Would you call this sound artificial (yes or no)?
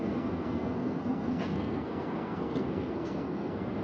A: yes